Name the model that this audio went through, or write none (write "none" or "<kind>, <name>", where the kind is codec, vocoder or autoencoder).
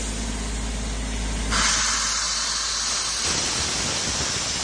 none